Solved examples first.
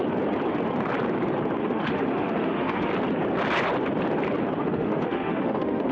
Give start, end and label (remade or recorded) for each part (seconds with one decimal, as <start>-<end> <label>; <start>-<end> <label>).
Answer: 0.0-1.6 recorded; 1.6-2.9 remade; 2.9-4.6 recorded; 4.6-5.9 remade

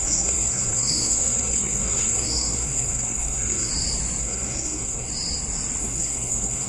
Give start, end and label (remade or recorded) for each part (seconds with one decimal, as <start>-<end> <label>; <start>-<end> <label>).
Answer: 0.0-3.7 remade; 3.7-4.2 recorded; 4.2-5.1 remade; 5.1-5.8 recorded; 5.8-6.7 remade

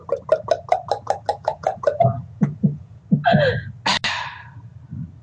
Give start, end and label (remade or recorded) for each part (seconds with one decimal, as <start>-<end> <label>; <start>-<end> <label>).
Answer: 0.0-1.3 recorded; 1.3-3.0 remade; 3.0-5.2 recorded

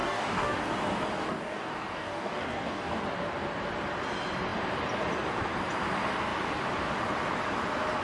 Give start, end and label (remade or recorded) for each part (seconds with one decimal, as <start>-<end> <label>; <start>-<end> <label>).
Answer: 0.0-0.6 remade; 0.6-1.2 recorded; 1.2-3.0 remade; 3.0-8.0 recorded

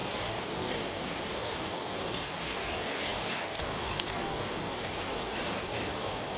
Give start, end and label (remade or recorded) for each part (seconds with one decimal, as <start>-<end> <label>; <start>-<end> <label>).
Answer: 0.0-6.4 remade

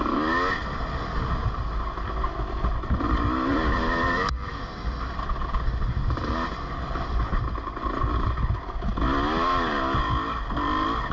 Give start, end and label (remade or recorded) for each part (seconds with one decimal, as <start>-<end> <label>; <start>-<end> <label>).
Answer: 0.0-11.1 recorded

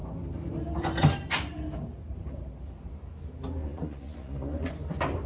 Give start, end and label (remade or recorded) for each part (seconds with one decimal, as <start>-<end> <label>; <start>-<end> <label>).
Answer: 0.0-3.6 recorded; 3.6-4.7 remade; 4.7-5.3 recorded

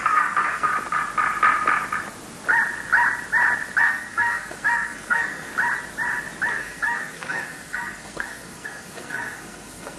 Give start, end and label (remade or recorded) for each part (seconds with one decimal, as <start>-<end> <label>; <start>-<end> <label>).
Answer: 0.0-0.7 remade; 0.7-3.8 recorded; 3.8-5.5 remade; 5.5-6.5 recorded; 6.5-10.0 remade